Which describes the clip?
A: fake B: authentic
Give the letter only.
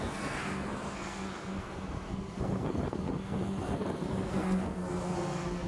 A